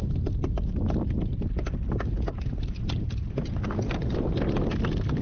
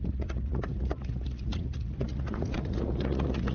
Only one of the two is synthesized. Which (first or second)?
second